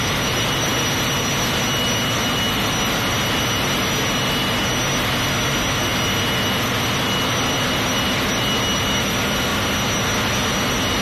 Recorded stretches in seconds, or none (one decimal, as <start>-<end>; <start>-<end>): 0.0-11.0